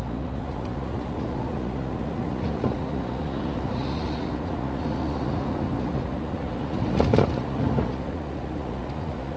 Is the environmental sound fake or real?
fake